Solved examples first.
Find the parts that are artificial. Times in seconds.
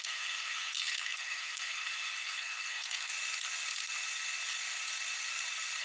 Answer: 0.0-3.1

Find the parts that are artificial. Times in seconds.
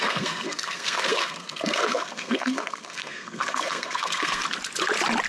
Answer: 0.0-4.4